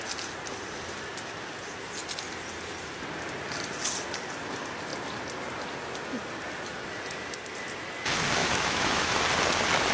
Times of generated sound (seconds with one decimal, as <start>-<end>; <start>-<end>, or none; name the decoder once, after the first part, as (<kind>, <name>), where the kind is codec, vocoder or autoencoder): 8.4-9.2 (autoencoder, DAC-VAE)

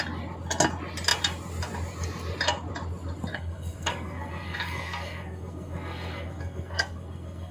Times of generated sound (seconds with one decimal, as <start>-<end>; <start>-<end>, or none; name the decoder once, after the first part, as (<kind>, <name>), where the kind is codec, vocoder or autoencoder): 3.3-7.5 (codec, SNAC)

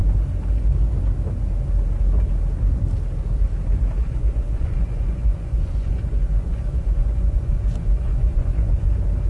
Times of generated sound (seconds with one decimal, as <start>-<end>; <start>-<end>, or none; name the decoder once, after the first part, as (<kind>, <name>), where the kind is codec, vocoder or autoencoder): 4.0-8.9 (vocoder, Vocos)

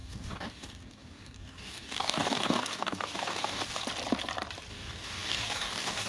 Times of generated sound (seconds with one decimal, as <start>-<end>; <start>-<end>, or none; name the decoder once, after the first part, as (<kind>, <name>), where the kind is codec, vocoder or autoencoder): 0.0-3.8 (codec, DAC); 4.7-6.1